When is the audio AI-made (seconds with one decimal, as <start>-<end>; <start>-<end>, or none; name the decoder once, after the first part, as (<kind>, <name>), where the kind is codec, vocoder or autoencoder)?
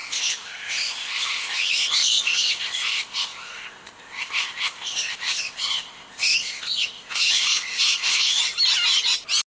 0.0-8.4 (codec, ZipCodec)